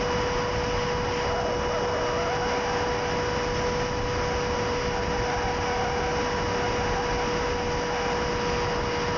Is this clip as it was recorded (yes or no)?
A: yes